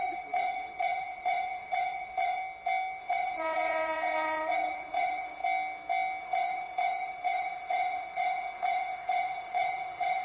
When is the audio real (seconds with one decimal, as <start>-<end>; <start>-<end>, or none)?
2.4-3.0; 5.4-6.2